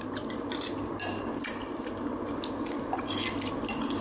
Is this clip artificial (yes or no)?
no